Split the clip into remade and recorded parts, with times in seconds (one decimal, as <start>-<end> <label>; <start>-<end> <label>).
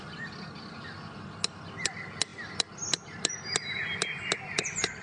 0.0-5.0 recorded